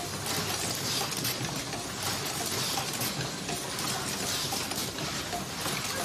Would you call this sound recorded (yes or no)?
yes